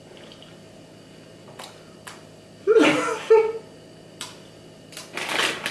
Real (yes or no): yes